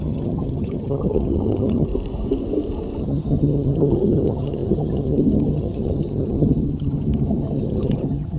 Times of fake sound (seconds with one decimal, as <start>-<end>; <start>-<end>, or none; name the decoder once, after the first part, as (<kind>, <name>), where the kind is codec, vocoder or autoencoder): 0.0-1.9 (vocoder, HiFi-GAN); 3.0-8.4

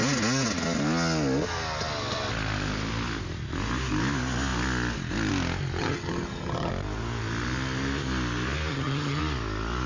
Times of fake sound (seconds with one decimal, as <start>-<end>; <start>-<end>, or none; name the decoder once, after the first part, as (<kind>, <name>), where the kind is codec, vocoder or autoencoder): 5.8-6.7 (vocoder, HiFi-GAN); 8.7-9.2

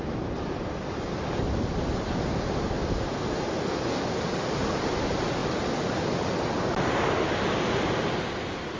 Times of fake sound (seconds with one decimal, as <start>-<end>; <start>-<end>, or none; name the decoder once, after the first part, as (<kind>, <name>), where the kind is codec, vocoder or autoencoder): none

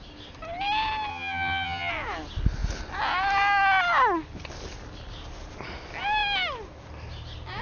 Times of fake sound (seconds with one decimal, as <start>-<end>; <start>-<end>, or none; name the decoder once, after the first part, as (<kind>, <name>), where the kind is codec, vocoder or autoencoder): 1.1-1.9 (vocoder, HiFi-GAN)

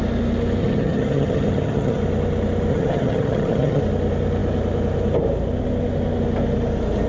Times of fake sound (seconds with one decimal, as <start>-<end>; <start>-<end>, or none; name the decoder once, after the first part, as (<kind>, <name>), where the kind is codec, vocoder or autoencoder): 0.6-2.0 (vocoder, HiFi-GAN); 2.7-3.8